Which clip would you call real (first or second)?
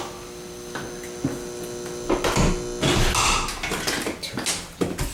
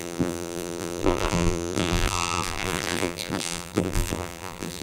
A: first